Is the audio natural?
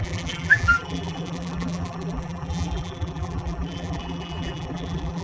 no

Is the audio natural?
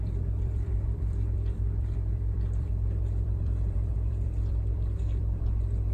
no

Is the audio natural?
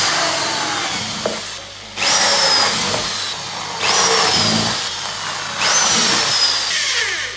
yes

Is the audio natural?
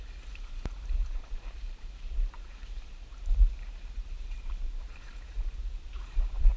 no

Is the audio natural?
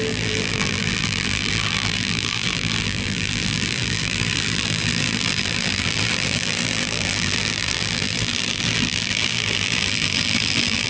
no